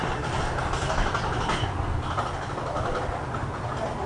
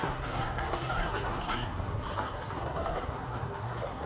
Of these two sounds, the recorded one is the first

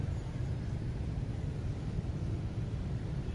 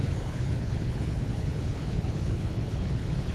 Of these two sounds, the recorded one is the first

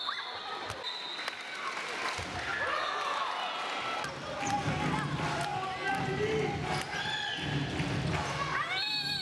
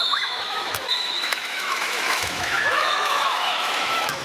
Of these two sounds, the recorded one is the first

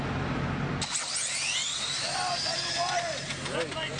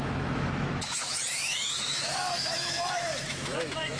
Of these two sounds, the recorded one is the first